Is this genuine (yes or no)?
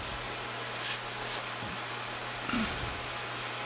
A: yes